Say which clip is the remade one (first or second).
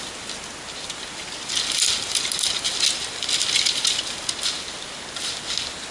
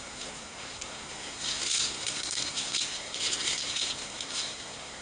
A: second